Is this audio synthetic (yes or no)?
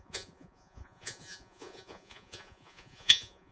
yes